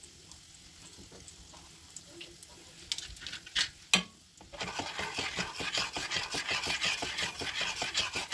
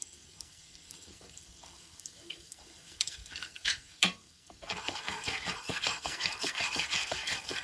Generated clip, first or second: second